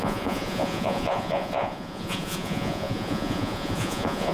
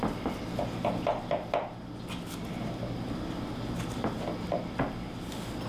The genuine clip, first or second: second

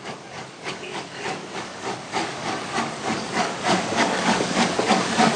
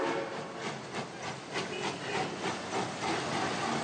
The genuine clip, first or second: second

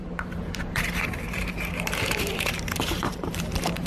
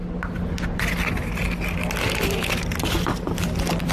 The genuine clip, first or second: second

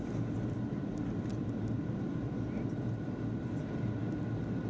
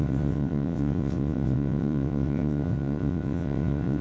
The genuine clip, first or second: first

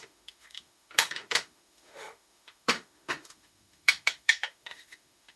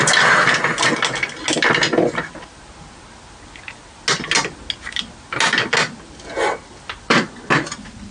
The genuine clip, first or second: second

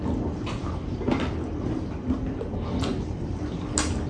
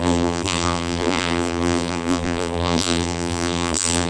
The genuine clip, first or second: first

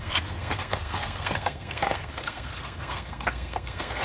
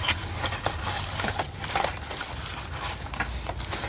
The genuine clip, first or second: second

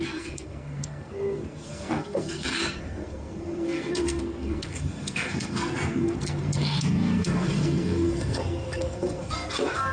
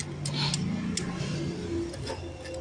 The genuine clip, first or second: second